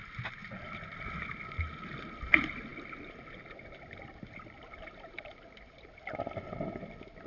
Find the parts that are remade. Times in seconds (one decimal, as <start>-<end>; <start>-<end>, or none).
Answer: none